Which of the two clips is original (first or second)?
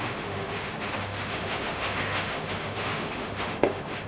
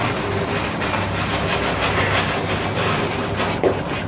second